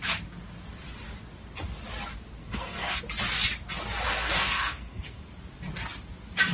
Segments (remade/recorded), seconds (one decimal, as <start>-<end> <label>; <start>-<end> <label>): 0.0-2.4 recorded; 2.4-3.0 remade; 3.0-4.1 recorded; 4.1-5.2 remade; 5.2-6.5 recorded